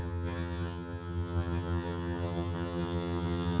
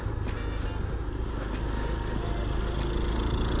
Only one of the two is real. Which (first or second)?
second